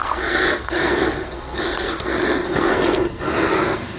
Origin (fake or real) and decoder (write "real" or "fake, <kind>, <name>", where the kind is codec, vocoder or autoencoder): fake, codec, SNAC